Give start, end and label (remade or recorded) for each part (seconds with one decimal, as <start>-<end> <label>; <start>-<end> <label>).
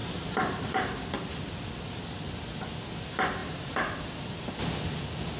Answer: 0.0-0.8 remade; 0.8-3.4 recorded; 3.4-4.5 remade; 4.5-5.4 recorded